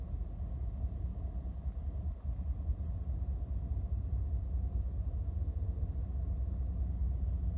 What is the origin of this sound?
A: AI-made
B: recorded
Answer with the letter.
B